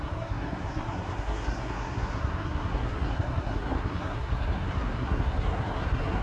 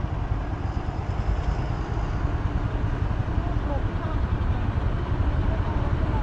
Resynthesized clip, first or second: first